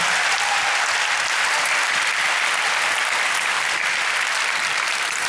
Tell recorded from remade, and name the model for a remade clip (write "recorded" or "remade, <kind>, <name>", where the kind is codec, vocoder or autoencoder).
recorded